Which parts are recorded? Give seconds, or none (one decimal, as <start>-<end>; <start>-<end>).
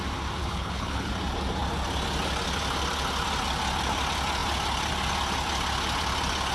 0.0-0.4; 1.1-6.5